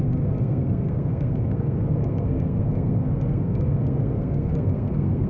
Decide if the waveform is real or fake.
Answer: fake